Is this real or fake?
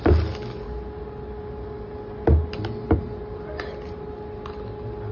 real